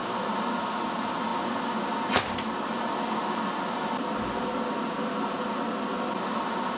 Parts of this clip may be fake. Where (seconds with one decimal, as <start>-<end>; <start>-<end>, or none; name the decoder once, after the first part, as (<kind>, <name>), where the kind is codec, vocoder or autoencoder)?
none